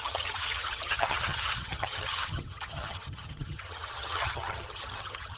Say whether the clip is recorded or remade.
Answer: remade